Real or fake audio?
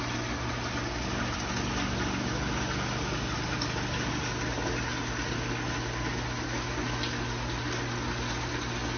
real